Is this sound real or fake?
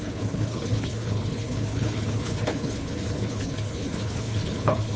fake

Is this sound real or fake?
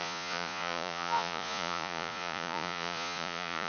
fake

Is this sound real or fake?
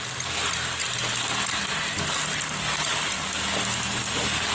real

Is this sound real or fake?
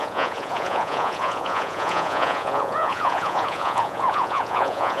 fake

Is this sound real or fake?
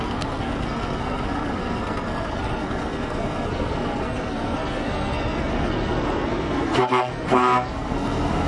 fake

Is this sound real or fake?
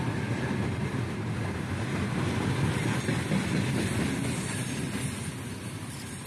real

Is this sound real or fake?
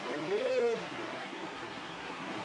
fake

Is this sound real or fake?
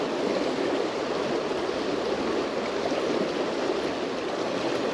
real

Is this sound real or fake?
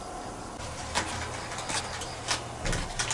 real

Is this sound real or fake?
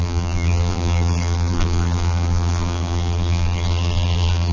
fake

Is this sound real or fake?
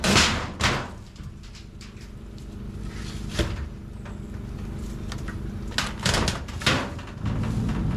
real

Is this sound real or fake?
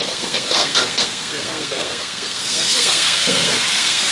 fake